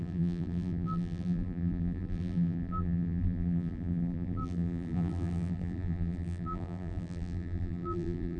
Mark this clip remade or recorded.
remade